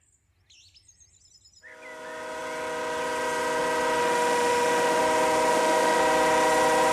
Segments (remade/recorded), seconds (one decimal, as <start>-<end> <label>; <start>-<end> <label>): 0.0-4.0 recorded; 4.0-5.0 remade; 5.0-5.5 recorded; 5.5-6.0 remade; 6.0-6.9 recorded

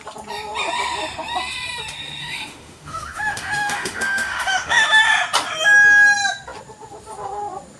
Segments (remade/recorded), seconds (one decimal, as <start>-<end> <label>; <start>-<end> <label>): 0.0-2.2 recorded; 2.2-5.0 remade; 5.0-7.8 recorded

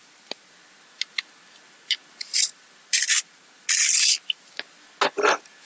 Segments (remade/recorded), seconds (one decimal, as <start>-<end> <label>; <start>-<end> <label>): 0.0-5.7 recorded